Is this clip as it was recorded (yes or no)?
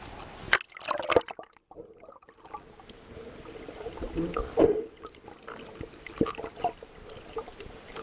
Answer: yes